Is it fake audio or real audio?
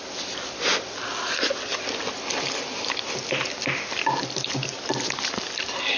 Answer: real